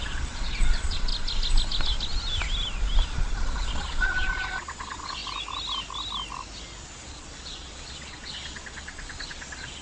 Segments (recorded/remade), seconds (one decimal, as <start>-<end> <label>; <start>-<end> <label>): 0.0-1.1 remade; 1.1-3.0 recorded; 3.0-5.2 remade; 5.2-6.8 recorded; 6.8-9.8 remade